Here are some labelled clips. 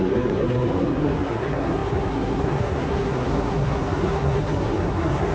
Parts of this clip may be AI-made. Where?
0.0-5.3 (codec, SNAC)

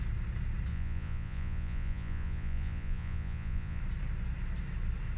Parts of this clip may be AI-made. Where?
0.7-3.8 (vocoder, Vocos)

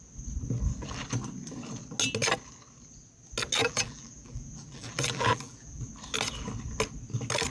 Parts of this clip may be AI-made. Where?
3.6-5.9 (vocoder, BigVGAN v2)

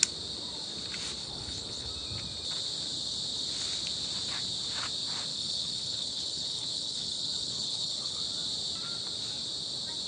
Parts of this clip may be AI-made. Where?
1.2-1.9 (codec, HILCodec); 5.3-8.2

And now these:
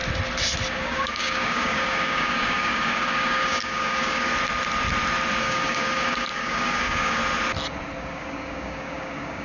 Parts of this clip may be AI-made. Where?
0.7-4.3 (codec, DAC); 5.4-7.2; 8.0-9.4

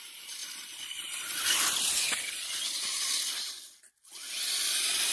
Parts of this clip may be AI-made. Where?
none

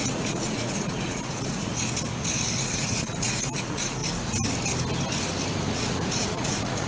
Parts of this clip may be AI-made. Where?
0.0-1.7 (vocoder, Vocos); 2.6-4.0; 5.7-6.9

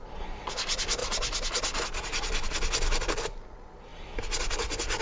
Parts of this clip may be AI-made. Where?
none